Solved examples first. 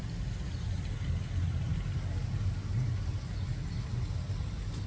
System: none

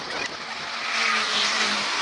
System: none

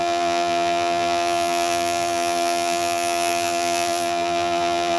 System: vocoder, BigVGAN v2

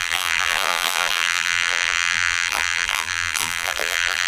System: vocoder, BigVGAN v2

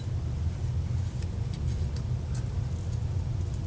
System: vocoder, BigVGAN v2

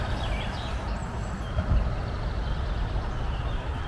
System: none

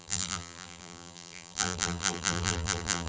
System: vocoder, BigVGAN v2